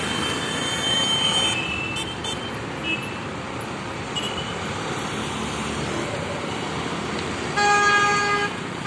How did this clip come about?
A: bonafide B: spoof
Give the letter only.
A